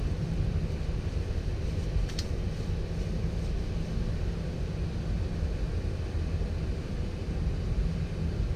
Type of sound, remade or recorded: recorded